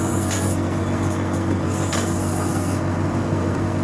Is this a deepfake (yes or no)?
yes